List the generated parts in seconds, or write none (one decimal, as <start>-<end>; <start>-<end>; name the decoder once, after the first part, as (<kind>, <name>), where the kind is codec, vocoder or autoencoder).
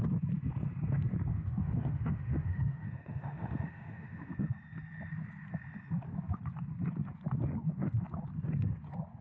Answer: 1.3-4.3 (autoencoder, DAC-VAE)